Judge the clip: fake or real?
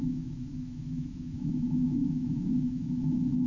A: fake